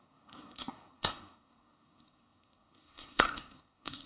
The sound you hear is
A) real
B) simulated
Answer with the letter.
B